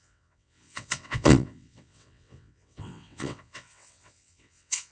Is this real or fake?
fake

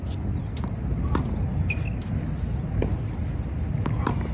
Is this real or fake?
real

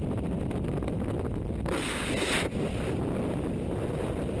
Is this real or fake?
real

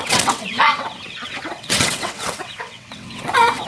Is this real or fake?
fake